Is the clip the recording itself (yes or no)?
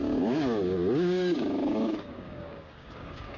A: no